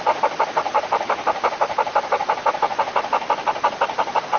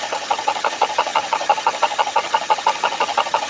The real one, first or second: first